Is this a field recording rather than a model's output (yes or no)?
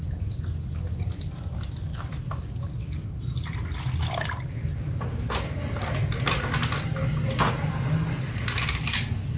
yes